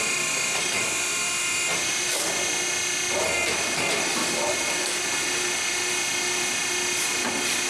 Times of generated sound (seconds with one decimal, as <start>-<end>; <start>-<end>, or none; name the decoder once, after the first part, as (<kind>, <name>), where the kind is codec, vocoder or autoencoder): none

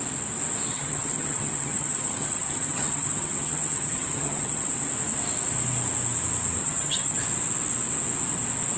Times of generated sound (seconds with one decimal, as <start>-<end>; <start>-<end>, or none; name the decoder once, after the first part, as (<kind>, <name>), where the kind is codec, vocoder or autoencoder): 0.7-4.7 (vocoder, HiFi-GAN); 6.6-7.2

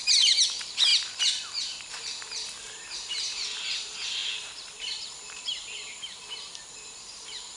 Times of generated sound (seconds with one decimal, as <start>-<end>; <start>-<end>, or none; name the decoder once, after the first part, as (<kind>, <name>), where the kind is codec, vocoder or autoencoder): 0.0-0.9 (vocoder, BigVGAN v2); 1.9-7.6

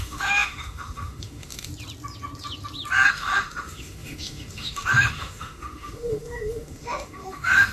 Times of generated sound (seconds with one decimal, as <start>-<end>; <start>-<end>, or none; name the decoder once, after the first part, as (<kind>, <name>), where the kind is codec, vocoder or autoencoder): 0.0-1.7 (autoencoder, DAC-VAE); 3.1-7.7